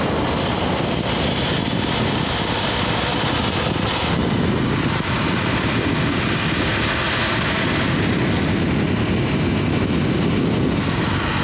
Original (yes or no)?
yes